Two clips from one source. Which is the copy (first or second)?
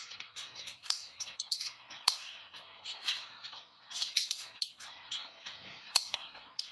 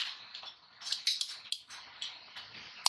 first